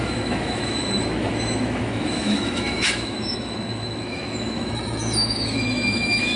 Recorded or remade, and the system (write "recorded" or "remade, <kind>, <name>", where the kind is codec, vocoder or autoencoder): remade, autoencoder, DAC-VAE